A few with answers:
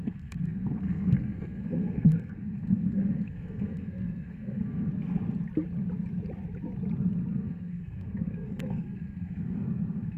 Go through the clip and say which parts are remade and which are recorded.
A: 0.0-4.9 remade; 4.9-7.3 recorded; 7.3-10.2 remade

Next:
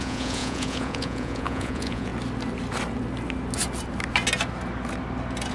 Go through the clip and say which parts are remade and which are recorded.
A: 0.0-2.1 remade; 2.1-5.5 recorded

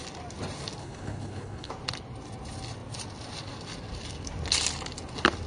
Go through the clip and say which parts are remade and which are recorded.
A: 0.0-0.8 recorded; 0.8-1.7 remade; 1.7-5.5 recorded

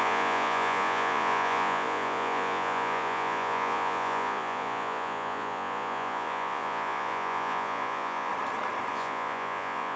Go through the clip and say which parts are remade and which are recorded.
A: 0.0-8.3 remade; 8.3-8.9 recorded; 8.9-10.0 remade